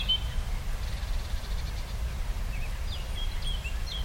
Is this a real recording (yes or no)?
yes